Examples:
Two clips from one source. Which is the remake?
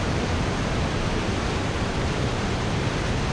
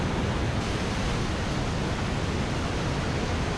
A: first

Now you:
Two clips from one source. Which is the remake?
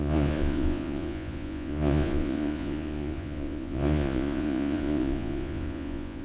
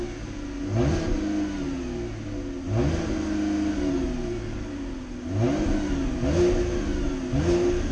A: first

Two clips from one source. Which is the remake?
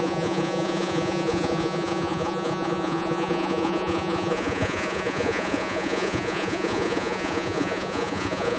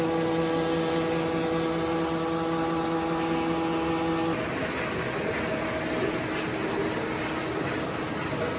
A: first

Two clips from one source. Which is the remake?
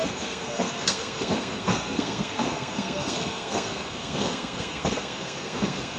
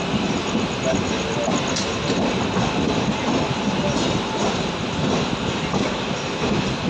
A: first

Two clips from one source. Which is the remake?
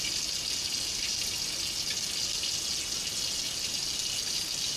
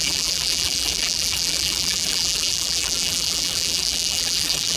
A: second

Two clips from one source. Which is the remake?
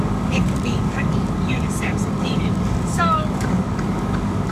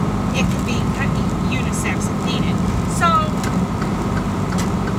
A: first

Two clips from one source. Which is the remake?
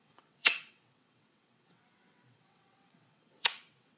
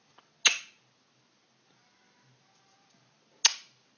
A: first